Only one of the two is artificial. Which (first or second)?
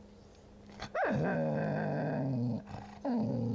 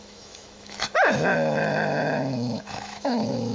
second